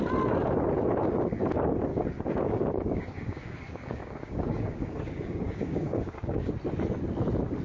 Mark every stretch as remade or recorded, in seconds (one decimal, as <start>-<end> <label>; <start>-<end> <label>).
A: 0.0-1.9 recorded; 1.9-6.5 remade; 6.5-7.6 recorded